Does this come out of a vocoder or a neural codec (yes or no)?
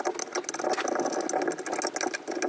no